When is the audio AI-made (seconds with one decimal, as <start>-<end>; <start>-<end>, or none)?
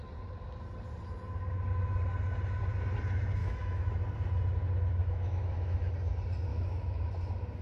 3.4-3.9; 5.0-5.9; 6.5-7.1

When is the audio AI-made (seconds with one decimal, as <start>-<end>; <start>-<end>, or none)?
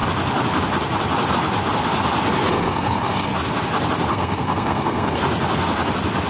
2.5-3.3; 4.1-5.2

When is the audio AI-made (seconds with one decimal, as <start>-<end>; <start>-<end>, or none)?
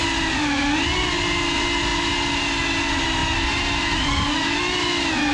none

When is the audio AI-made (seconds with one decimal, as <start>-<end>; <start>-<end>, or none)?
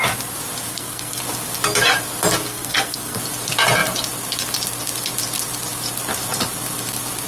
0.7-1.2; 2.5-3.2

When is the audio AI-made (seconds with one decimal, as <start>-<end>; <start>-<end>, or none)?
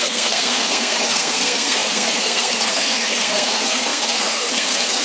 0.0-5.0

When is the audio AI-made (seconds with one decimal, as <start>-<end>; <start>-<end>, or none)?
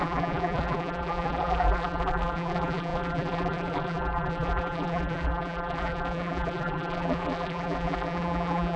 0.0-8.8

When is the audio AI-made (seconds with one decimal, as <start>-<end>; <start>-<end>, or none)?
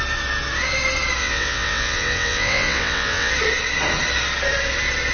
1.2-3.3